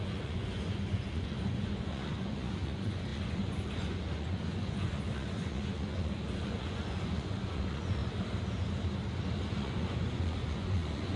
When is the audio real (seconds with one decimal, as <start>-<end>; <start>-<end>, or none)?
8.0-9.5